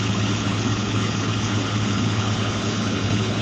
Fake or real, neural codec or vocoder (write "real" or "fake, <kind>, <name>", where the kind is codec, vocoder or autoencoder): fake, codec, HILCodec